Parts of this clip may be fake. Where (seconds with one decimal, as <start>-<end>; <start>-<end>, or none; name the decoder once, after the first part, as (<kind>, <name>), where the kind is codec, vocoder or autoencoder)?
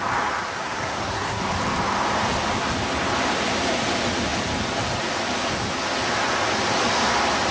0.6-1.4 (codec, SNAC)